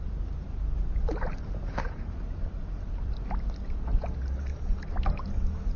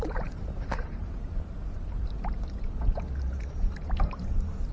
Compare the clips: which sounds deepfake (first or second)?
second